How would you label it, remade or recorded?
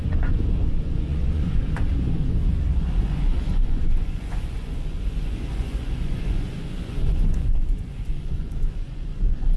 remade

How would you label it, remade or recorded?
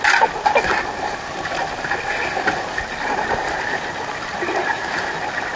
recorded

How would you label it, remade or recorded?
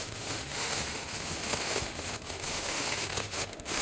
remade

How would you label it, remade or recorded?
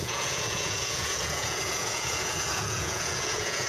remade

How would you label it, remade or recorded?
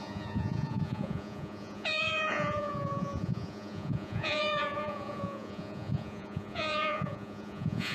remade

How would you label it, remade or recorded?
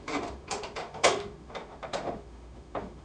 remade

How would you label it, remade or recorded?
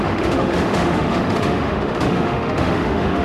remade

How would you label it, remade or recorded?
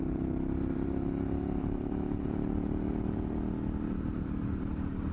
remade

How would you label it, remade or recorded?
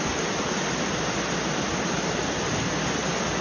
recorded